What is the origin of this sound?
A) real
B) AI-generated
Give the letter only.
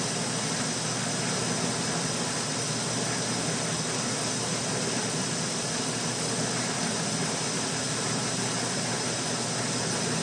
A